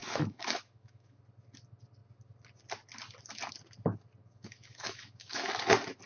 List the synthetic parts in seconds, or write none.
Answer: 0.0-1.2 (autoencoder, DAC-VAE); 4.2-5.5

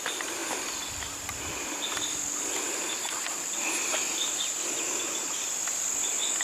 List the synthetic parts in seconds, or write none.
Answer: none

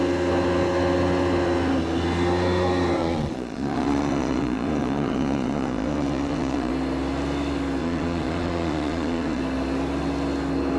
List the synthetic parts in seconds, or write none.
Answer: 3.0-6.7 (vocoder, Vocos); 7.8-9.4

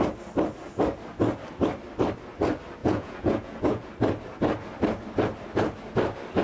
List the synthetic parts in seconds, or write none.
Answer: 2.8-3.9 (vocoder, Vocos)